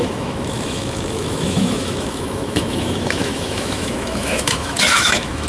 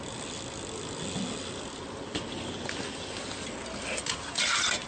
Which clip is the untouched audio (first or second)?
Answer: second